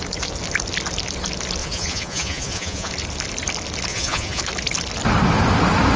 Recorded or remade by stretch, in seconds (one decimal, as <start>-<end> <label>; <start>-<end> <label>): 0.0-1.6 recorded; 1.6-2.9 remade; 2.9-3.9 recorded; 3.9-4.4 remade; 4.4-6.0 recorded